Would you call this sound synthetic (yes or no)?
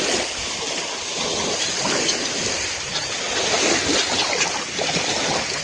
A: no